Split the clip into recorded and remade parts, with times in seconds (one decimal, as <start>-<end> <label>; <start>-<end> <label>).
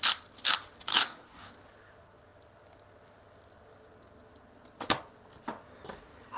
0.0-0.9 recorded; 0.9-1.5 remade; 1.5-6.4 recorded